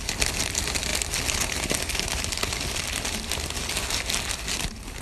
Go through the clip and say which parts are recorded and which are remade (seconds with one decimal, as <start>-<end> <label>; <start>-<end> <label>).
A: 0.0-5.0 recorded